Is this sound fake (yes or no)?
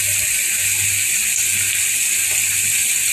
no